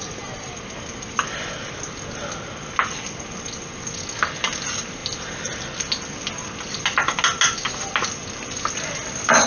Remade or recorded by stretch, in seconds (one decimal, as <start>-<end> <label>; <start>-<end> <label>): 0.0-9.5 recorded